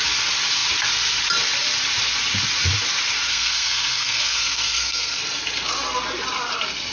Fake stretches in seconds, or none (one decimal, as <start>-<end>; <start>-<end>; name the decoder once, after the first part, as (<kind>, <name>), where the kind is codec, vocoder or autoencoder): 3.3-5.2 (codec, SNAC)